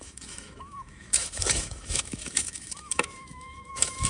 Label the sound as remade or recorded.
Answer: remade